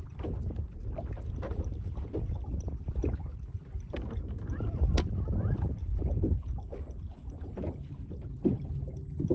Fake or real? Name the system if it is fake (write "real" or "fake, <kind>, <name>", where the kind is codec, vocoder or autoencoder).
fake, vocoder, BigVGAN v2